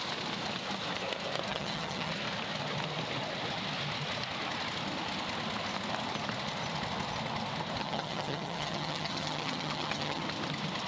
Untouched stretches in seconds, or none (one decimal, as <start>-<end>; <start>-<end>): 0.0-1.5; 2.1-7.8; 10.2-10.9